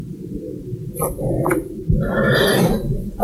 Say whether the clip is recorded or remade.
recorded